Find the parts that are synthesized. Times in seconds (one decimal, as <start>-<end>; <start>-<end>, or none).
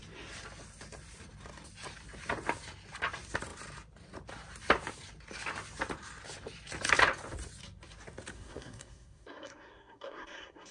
8.3-10.7